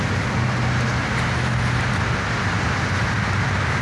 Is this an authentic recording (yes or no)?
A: yes